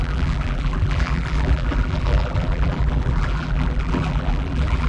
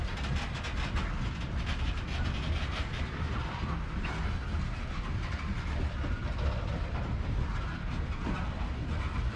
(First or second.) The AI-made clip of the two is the first